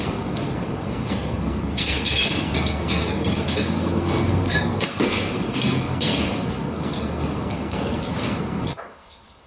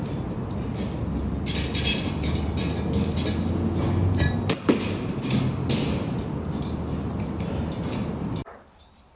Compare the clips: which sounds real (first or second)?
second